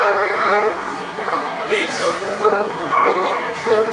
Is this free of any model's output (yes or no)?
no